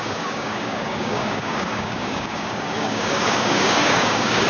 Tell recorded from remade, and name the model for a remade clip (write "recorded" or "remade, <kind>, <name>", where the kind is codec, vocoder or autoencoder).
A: remade, codec, DAC